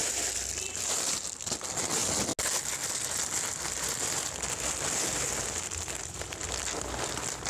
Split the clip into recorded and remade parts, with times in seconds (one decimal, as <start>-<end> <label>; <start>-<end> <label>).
0.0-1.1 remade; 1.1-3.5 recorded; 3.5-7.5 remade